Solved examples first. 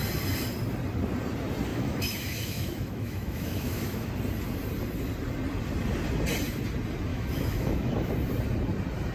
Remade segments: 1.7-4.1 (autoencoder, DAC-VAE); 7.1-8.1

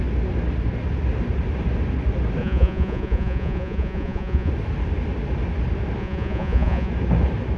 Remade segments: 2.4-4.5 (vocoder, Vocos); 6.0-6.9

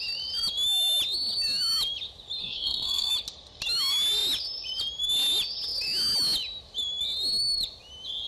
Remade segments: 2.4-3.1 (codec, SNAC)

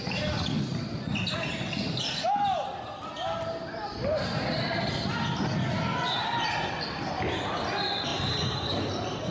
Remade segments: 8.1-9.3 (vocoder, BigVGAN v2)

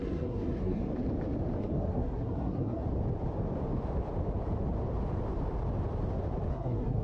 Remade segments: 0.0-0.9 (codec, SNAC); 1.6-2.8; 6.5-7.0

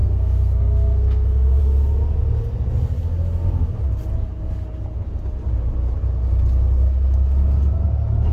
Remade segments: 0.0-1.6 (codec, SNAC)

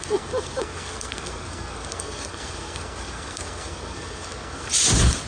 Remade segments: 0.0-4.7 (codec, SNAC)

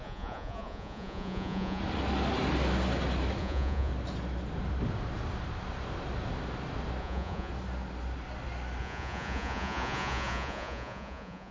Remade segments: 0.0-1.8 (vocoder, Vocos); 3.4-3.9; 7.0-7.5; 8.8-11.5